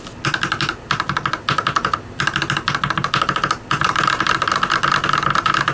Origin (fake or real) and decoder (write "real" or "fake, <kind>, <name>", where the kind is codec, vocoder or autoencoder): real